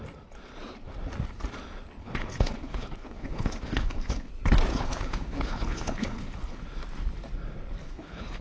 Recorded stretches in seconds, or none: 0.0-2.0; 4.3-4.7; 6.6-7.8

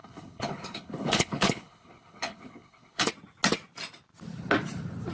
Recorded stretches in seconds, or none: 3.1-5.1

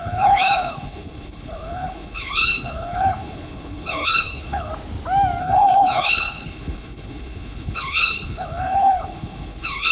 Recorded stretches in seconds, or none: 4.7-5.4